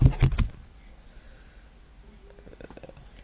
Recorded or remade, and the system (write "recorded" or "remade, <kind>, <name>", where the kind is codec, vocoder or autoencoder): recorded